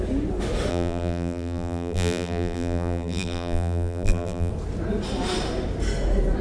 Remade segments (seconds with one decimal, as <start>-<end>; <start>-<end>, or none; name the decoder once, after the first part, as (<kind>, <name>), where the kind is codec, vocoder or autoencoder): 0.7-4.5 (vocoder, BigVGAN v2)